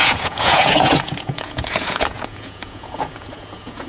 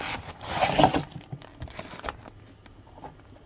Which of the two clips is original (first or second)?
second